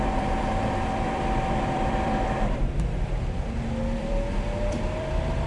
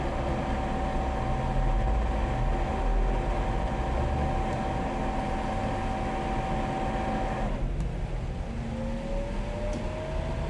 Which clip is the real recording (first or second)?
second